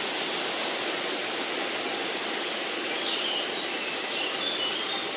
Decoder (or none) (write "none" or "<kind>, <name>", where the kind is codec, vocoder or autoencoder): none